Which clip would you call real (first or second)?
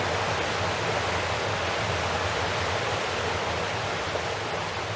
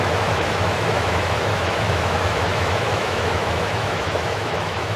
first